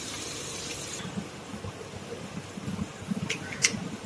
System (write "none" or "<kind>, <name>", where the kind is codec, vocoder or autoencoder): none